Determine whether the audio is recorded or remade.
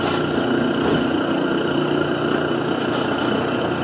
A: recorded